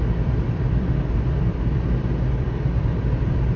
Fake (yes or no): yes